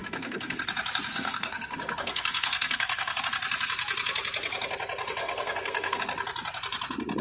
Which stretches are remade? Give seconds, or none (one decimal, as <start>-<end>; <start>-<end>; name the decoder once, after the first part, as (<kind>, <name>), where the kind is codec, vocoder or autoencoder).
0.0-0.7 (codec, SNAC); 1.1-3.2; 5.2-6.0